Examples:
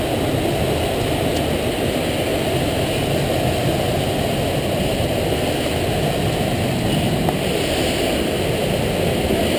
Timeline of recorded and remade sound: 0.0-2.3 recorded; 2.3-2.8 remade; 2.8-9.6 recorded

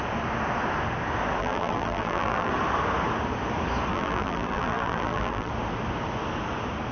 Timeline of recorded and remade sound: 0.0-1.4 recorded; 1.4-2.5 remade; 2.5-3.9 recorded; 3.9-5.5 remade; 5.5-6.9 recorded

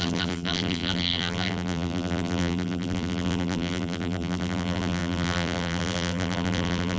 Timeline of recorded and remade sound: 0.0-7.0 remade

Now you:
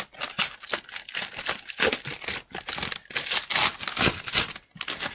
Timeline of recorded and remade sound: 0.0-5.1 recorded

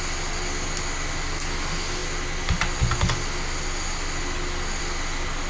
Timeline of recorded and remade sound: 0.0-5.5 recorded